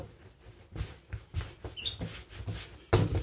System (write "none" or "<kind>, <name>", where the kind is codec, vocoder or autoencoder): none